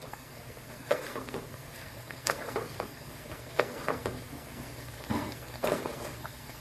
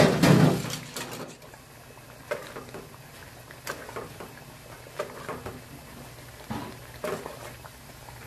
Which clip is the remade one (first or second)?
first